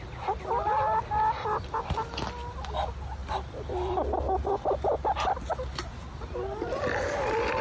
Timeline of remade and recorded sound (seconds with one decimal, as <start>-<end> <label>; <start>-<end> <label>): 0.0-7.6 recorded